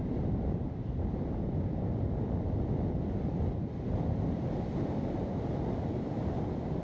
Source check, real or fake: real